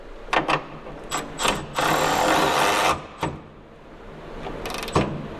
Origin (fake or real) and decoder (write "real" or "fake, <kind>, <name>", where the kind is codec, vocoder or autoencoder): real